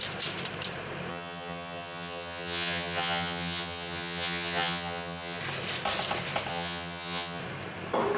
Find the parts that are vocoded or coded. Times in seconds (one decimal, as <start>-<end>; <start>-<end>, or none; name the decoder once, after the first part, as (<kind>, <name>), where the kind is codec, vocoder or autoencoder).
1.1-5.4 (vocoder, HiFi-GAN); 6.5-7.4